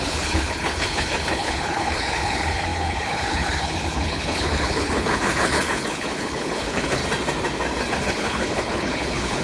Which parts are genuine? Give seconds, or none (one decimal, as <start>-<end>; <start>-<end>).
7.0-7.9